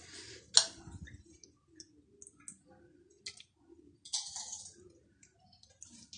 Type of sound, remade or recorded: recorded